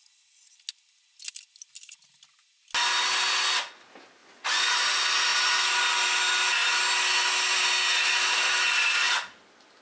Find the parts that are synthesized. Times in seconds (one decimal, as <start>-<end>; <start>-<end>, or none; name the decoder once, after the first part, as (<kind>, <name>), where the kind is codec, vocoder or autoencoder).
4.2-4.7 (vocoder, Vocos)